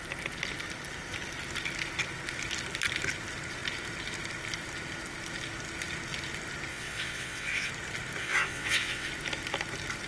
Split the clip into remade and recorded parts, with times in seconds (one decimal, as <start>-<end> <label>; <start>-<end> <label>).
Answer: 0.0-6.7 recorded; 6.7-7.7 remade; 7.7-8.2 recorded; 8.2-9.1 remade; 9.1-10.1 recorded